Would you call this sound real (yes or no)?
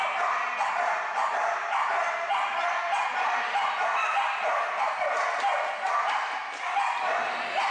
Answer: yes